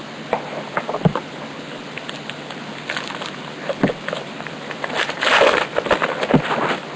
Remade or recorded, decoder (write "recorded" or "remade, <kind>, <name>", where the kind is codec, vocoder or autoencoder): recorded